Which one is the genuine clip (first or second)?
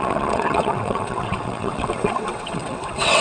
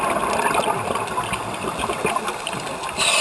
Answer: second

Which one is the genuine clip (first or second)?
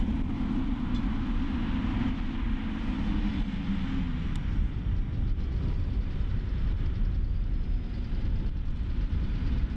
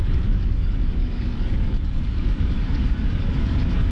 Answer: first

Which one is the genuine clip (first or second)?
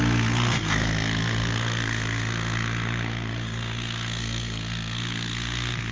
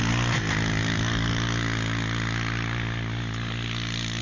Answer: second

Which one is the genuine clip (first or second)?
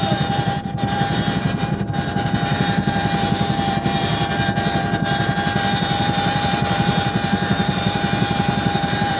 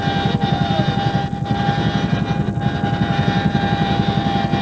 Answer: second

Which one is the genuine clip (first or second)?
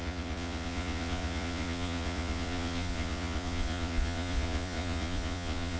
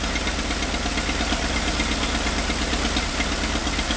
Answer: second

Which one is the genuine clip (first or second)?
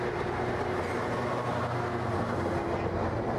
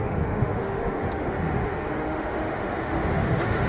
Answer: first